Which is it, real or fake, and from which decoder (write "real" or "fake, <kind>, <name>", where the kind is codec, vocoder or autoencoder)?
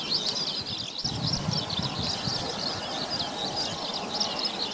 real